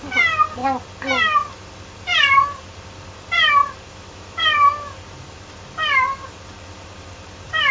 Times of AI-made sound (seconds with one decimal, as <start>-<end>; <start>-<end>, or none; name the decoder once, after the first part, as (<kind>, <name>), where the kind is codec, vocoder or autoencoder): none